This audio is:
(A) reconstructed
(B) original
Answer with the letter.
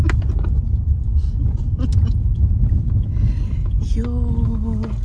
B